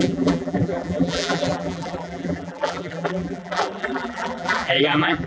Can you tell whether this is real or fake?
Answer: fake